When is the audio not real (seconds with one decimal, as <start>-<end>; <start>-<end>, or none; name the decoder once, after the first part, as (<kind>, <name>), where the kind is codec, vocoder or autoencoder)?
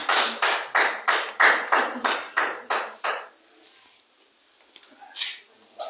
none